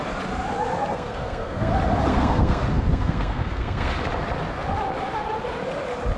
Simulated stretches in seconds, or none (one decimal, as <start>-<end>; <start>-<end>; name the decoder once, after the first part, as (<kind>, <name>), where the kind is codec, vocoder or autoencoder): 0.9-1.7 (codec, SNAC); 2.1-3.9